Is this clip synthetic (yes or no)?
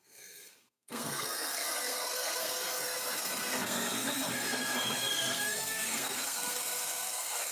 yes